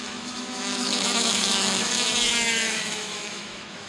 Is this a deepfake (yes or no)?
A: yes